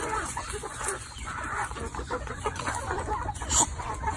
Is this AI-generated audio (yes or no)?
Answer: yes